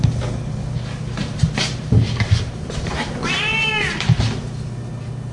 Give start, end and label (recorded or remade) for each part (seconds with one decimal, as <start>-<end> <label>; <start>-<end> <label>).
0.0-1.2 recorded; 1.2-4.4 remade; 4.4-5.3 recorded